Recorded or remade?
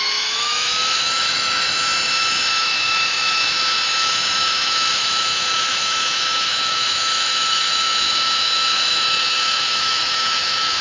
remade